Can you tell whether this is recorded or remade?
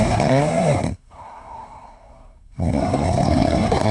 remade